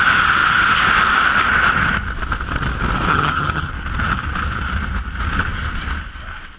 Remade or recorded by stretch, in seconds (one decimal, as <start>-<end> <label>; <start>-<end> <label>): 0.0-3.1 recorded; 3.1-3.7 remade; 3.7-6.6 recorded